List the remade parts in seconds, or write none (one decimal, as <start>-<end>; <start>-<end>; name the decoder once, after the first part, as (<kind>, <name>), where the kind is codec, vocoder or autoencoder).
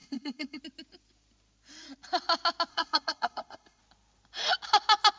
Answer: 0.0-0.6 (codec, SNAC); 2.7-3.8